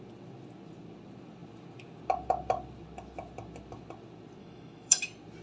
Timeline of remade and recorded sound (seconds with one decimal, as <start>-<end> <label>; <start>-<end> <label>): 0.0-4.4 recorded; 4.4-5.0 remade; 5.0-5.4 recorded